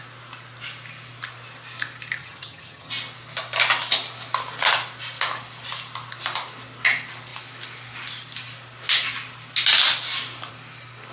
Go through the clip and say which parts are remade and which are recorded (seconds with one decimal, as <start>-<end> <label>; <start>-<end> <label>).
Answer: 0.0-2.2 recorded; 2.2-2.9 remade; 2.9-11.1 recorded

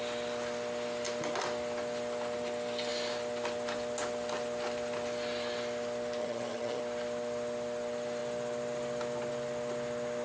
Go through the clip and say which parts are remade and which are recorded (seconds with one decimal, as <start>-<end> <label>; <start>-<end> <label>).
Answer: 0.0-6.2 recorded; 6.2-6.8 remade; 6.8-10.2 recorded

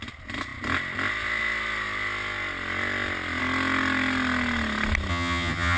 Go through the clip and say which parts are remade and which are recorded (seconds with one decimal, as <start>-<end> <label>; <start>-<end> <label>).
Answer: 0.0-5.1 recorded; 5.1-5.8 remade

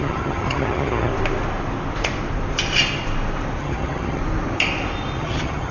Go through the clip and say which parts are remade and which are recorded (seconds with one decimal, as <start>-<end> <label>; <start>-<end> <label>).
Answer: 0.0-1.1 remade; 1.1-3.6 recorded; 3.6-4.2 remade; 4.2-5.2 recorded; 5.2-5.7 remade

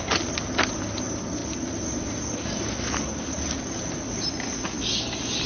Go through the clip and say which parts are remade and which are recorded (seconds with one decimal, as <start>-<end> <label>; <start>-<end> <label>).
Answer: 0.0-5.5 recorded

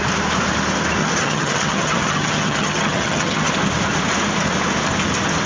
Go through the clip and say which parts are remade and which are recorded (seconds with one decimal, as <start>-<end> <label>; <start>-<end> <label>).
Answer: 0.0-1.0 recorded; 1.0-3.5 remade; 3.5-5.5 recorded